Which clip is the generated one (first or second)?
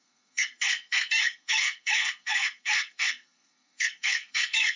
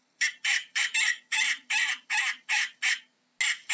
first